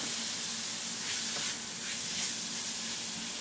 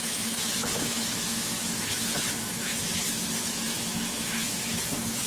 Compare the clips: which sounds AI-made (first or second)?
second